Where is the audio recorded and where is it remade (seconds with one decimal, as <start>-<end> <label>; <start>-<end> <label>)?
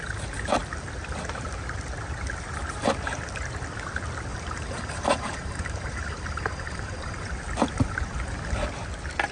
0.0-4.3 recorded; 4.3-7.3 remade; 7.3-9.3 recorded